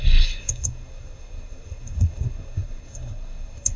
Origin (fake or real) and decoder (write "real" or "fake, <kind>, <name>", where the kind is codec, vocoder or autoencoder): fake, codec, SNAC